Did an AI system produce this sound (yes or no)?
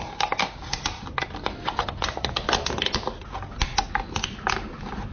no